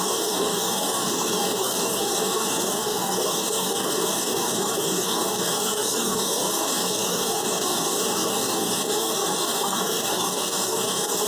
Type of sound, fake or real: fake